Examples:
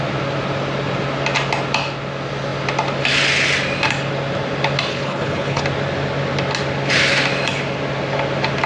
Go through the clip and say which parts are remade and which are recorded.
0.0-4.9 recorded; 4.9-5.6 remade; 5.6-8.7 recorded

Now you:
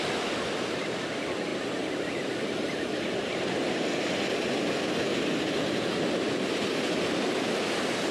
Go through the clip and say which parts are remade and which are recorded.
0.0-8.1 recorded

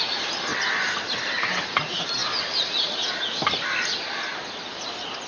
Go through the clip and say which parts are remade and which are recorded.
0.0-0.5 remade; 0.5-1.3 recorded; 1.3-4.3 remade; 4.3-5.3 recorded

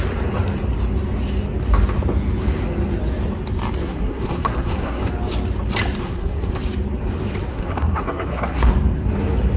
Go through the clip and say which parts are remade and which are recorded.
0.0-3.8 recorded; 3.8-5.1 remade; 5.1-6.0 recorded; 6.0-6.5 remade; 6.5-7.5 recorded; 7.5-8.7 remade; 8.7-9.6 recorded

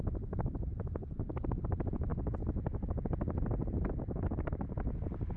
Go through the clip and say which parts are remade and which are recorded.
0.0-5.4 recorded

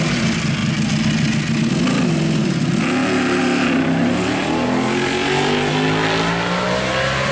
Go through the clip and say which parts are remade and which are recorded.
0.0-7.3 recorded

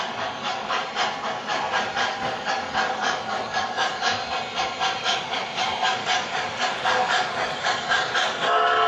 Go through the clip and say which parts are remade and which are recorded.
0.0-0.8 remade; 0.8-2.0 recorded; 2.0-4.2 remade; 4.2-5.0 recorded; 5.0-8.9 remade